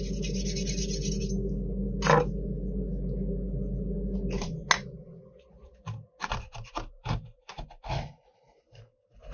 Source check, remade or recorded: recorded